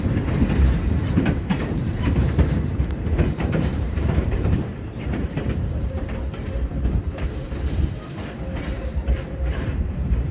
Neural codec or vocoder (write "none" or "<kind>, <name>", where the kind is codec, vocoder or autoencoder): vocoder, BigVGAN v2